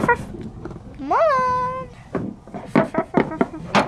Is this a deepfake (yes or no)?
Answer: no